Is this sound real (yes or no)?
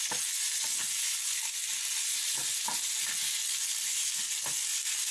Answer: yes